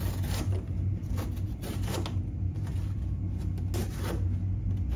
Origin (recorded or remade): recorded